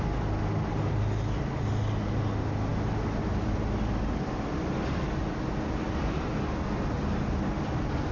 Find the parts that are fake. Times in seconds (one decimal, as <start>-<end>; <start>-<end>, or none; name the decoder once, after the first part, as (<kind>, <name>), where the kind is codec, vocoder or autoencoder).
none